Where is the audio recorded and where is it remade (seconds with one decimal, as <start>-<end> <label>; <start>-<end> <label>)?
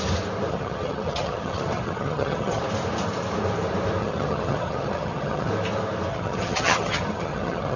0.0-0.5 recorded; 0.5-2.6 remade; 2.6-4.0 recorded; 4.0-5.5 remade; 5.5-6.1 recorded; 6.1-7.8 remade